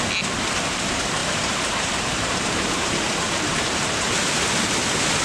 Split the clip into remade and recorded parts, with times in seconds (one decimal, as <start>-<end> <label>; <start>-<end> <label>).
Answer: 0.0-1.2 recorded; 1.2-4.3 remade; 4.3-5.2 recorded